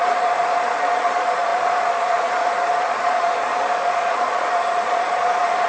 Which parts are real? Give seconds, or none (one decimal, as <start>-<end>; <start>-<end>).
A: none